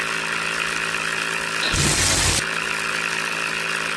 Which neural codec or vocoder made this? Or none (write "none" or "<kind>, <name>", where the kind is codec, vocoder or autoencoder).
none